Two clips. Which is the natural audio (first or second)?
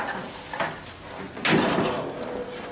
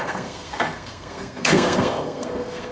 first